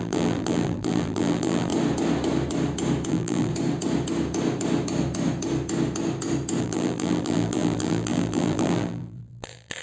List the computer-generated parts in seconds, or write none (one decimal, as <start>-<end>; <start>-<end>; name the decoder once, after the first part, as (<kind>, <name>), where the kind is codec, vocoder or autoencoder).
0.0-1.7 (vocoder, BigVGAN v2); 3.1-3.5; 6.6-9.8